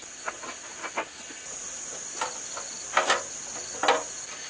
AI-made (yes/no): no